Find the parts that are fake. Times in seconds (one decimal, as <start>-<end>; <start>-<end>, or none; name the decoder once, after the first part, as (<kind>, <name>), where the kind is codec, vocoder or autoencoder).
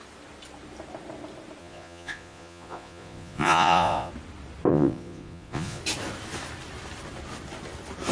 1.6-4.1 (vocoder, Vocos); 4.7-5.8